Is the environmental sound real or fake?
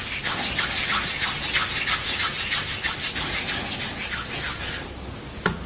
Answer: real